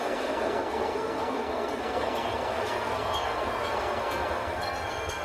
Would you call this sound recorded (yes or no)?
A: no